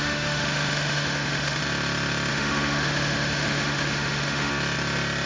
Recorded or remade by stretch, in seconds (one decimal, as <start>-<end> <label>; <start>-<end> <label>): 0.0-1.6 remade; 1.6-2.3 recorded; 2.3-4.5 remade; 4.5-5.3 recorded